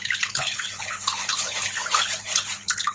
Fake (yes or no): yes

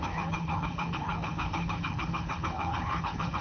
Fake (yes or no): yes